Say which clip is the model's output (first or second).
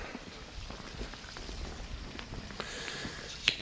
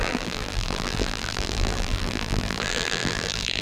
second